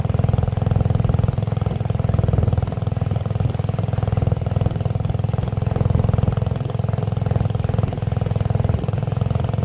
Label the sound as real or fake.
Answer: real